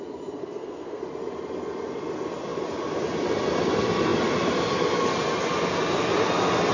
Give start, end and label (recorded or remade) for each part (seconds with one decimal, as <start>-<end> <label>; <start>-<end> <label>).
0.0-0.4 recorded; 0.4-1.0 remade; 1.0-6.7 recorded